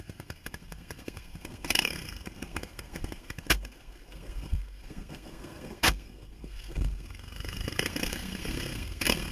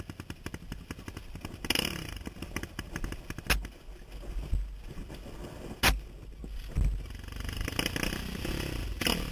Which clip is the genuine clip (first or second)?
second